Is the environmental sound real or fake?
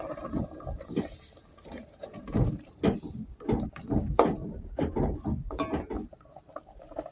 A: fake